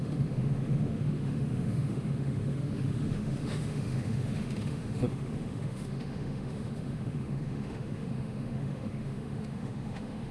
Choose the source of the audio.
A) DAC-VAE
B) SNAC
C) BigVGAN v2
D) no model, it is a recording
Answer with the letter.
A